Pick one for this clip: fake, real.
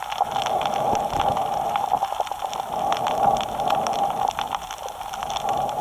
real